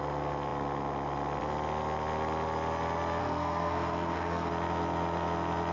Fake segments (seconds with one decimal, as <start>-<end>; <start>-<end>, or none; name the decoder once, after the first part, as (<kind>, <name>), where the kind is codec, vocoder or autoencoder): 3.2-4.5 (codec, SNAC)

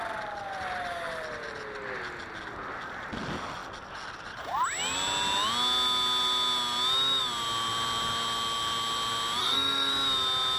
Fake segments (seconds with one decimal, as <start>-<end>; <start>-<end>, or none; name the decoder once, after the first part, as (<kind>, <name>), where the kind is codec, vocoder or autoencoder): 9.4-9.9 (codec, SNAC)

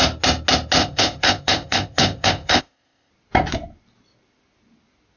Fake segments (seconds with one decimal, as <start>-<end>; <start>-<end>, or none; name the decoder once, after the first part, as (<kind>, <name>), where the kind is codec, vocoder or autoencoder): 0.8-3.1 (codec, ZipCodec)

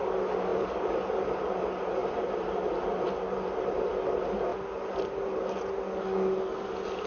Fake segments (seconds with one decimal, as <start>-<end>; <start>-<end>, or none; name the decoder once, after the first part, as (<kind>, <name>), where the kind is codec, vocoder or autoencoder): 0.5-1.6 (vocoder, BigVGAN v2)

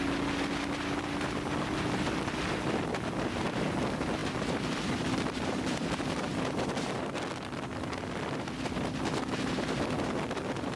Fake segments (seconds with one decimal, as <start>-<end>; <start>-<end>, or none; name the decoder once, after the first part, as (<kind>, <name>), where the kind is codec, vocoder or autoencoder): none

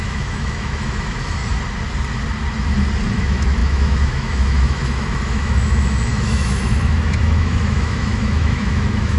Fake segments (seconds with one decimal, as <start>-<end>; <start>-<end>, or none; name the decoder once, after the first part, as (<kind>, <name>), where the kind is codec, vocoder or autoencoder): 0.0-1.4 (autoencoder, DAC-VAE); 3.1-9.2